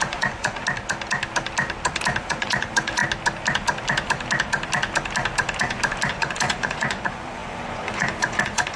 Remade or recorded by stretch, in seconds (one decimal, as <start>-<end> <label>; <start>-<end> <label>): 0.0-0.6 remade; 0.6-2.2 recorded; 2.2-3.0 remade; 3.0-6.1 recorded; 6.1-8.8 remade